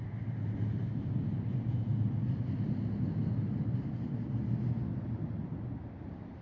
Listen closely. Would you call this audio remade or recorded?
recorded